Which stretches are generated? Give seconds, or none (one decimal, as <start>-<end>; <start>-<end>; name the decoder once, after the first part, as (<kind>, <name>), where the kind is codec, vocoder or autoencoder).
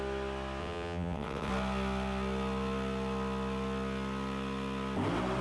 0.6-1.5 (vocoder, WaveNeXt)